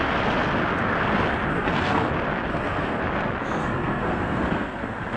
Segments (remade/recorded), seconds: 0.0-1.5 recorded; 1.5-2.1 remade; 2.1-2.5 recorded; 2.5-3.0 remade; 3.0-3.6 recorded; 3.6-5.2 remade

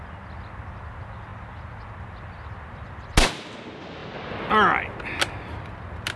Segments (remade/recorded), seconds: 0.0-6.2 recorded